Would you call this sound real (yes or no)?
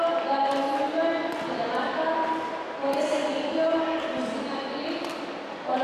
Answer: yes